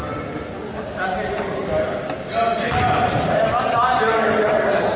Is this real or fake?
real